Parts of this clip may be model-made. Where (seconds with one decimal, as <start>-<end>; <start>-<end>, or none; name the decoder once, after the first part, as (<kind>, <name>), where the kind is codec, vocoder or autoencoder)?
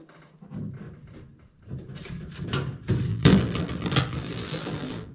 3.1-5.1 (vocoder, BigVGAN v2)